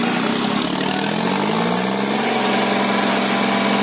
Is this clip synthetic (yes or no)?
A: no